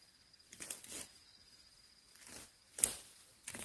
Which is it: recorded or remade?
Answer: recorded